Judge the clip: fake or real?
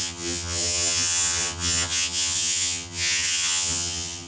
fake